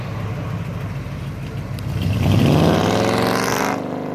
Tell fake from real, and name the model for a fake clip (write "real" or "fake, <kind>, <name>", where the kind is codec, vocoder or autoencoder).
real